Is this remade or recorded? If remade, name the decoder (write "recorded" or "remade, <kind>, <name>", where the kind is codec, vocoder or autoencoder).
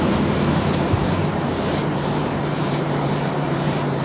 remade, vocoder, BigVGAN v2